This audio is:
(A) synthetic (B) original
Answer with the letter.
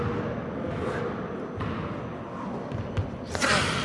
B